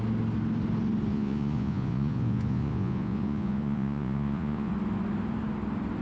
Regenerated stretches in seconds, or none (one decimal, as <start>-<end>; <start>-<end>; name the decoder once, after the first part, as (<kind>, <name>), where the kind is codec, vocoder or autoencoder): 1.1-4.7 (vocoder, Vocos)